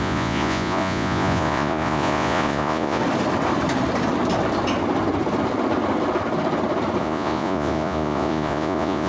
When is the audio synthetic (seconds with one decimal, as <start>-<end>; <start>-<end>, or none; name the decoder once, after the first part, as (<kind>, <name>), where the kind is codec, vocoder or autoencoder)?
0.0-3.0 (vocoder, Vocos); 7.0-9.1